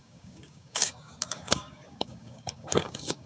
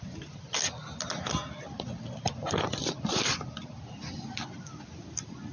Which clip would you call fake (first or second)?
first